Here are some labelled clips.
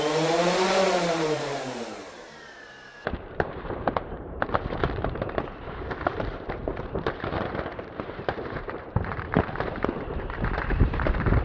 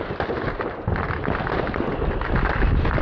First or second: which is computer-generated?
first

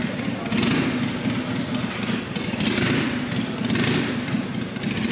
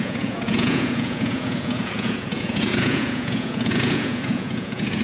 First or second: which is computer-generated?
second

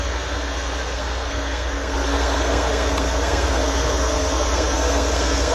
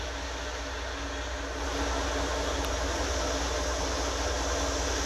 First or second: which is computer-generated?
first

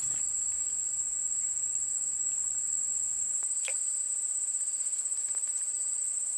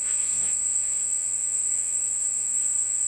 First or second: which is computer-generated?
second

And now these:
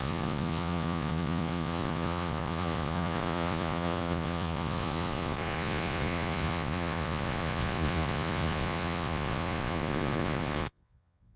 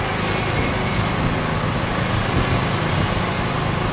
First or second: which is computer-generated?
first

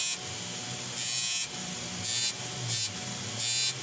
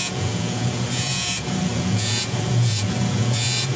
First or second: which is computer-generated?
second